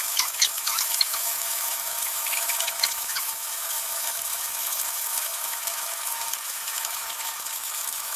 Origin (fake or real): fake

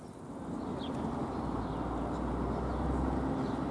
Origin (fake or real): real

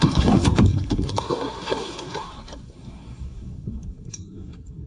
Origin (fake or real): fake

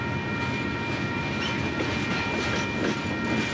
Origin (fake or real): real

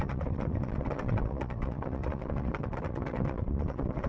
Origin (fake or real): fake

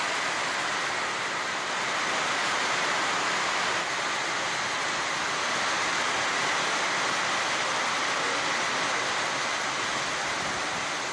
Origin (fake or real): real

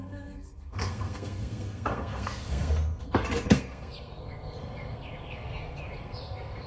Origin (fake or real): fake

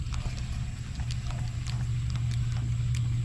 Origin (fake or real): real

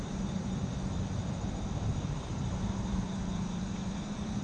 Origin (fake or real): fake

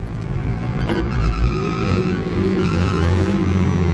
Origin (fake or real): fake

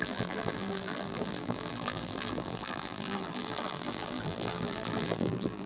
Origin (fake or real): fake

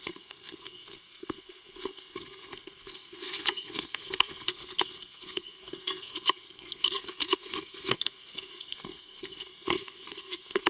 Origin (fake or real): fake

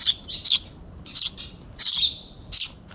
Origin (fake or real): real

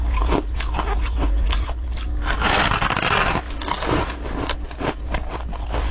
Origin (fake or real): real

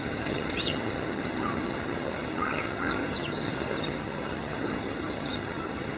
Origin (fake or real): fake